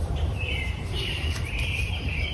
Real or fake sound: fake